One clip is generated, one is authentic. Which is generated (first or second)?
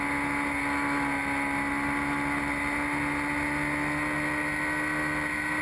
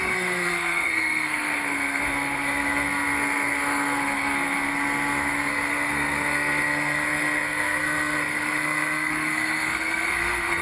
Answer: second